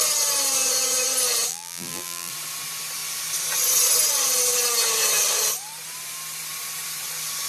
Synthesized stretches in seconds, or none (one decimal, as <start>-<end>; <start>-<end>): 1.5-2.3